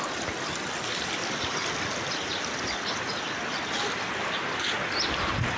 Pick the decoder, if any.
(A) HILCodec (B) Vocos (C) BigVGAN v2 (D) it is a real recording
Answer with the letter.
D